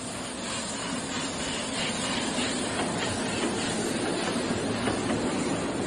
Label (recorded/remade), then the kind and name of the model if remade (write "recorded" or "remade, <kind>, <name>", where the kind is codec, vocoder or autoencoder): recorded